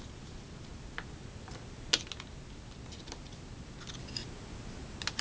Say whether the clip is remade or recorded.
recorded